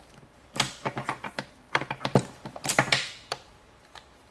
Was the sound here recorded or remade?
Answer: remade